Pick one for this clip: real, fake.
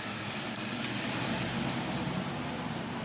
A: real